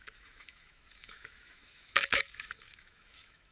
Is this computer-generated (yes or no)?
yes